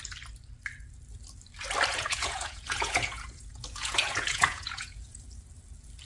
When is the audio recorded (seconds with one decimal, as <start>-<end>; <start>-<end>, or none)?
0.0-1.9; 5.2-6.0